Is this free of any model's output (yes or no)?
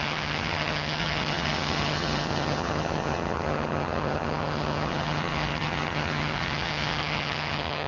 no